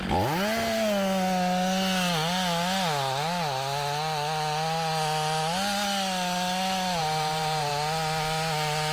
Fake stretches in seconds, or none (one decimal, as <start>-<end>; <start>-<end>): 7.0-7.7